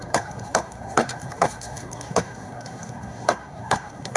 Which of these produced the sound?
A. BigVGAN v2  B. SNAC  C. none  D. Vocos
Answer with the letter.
B